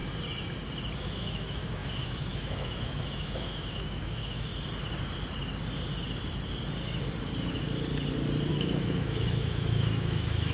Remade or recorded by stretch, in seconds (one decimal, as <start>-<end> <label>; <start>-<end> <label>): 0.0-1.0 recorded; 1.0-4.5 remade; 4.5-8.5 recorded; 8.5-10.5 remade